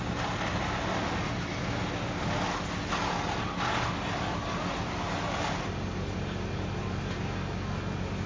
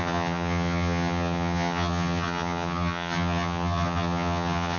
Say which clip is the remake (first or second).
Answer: second